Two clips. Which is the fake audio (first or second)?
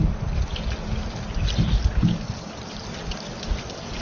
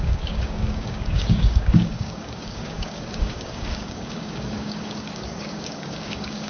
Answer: second